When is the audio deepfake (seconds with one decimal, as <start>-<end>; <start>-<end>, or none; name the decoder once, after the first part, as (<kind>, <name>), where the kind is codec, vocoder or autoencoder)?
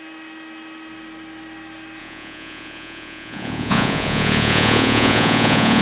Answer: 2.0-5.8 (vocoder, Vocos)